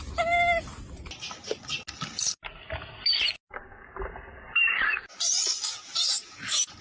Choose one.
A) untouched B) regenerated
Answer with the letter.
A